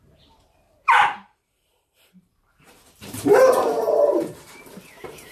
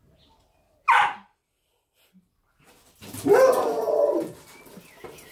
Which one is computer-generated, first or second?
first